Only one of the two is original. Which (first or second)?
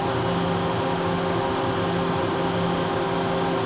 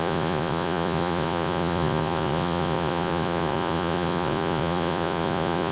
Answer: first